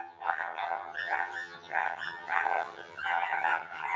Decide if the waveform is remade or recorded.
remade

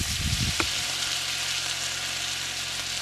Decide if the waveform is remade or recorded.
recorded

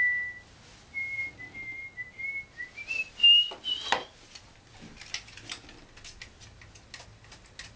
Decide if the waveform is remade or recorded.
recorded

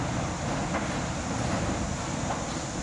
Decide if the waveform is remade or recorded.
recorded